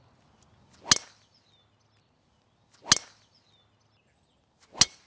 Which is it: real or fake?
real